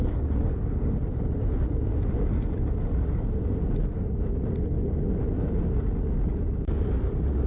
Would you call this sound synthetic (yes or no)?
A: no